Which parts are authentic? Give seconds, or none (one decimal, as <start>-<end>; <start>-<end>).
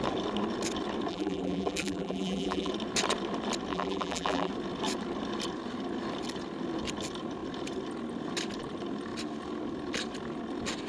0.0-1.1; 2.7-3.7; 4.5-10.9